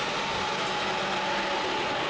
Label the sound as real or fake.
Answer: real